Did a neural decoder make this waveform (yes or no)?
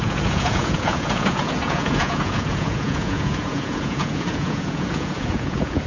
yes